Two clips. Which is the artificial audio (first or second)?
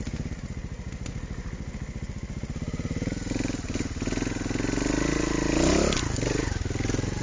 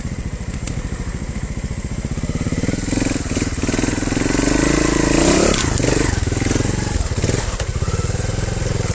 second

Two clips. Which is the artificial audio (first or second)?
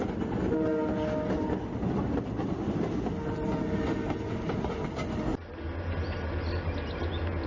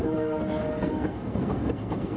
second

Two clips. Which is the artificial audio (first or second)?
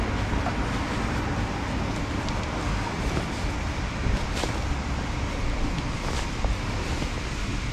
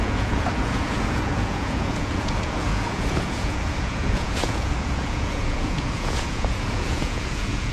second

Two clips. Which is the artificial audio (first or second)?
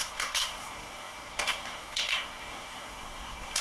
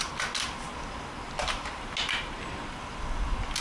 first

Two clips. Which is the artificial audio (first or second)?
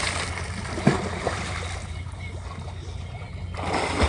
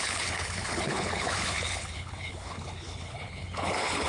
second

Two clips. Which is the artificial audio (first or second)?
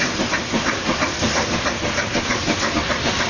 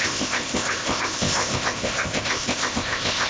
second